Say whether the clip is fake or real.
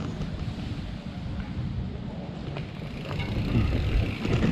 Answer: real